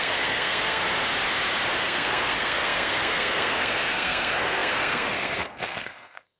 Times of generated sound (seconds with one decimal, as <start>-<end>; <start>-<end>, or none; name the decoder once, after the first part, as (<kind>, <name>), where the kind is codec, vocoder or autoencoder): 0.0-0.8 (codec, SNAC); 1.8-6.4